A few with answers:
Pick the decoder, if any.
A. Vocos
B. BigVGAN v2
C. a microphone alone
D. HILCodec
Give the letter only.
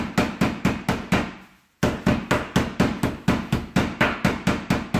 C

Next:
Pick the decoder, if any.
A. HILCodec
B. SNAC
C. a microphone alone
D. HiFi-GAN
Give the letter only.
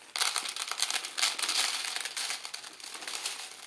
C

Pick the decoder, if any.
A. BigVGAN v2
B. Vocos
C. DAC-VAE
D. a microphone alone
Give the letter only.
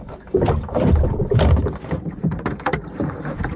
A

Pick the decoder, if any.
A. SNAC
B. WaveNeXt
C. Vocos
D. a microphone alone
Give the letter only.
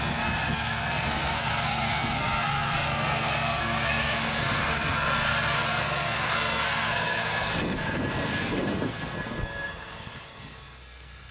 A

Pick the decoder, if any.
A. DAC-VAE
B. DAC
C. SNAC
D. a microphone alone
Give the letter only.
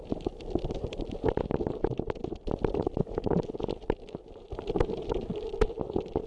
D